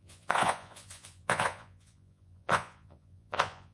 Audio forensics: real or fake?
fake